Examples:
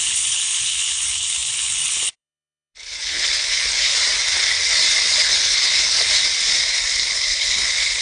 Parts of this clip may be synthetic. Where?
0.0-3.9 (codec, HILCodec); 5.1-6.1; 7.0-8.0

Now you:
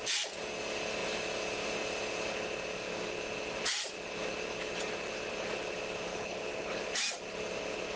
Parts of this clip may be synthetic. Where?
6.1-6.8 (codec, HILCodec)

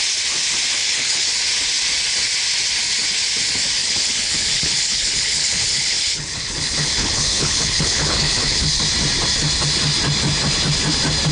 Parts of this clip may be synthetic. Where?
0.8-1.3 (codec, HILCodec); 3.8-8.8

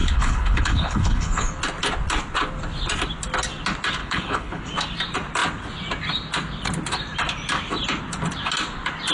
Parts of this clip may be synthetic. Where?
0.0-1.6 (codec, HILCodec); 4.0-4.6